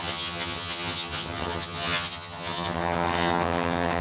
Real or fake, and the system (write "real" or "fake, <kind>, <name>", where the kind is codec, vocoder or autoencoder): fake, vocoder, HiFi-GAN